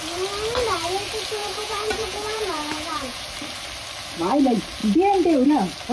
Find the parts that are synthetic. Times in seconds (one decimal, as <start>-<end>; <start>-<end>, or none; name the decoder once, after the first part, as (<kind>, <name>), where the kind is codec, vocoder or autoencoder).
1.4-3.2 (vocoder, Vocos)